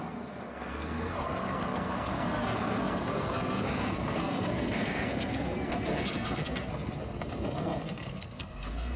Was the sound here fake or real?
fake